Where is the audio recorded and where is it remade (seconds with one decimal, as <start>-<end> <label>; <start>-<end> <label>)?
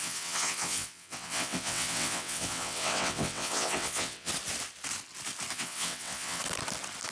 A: 0.0-4.3 remade; 4.3-5.5 recorded; 5.5-6.4 remade; 6.4-7.1 recorded